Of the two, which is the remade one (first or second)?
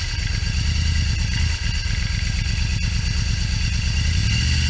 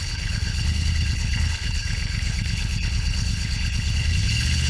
second